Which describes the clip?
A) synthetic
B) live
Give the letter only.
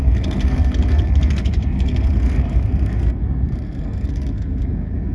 A